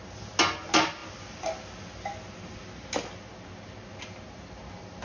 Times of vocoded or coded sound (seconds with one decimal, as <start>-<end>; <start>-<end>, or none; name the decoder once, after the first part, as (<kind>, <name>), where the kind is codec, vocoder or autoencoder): none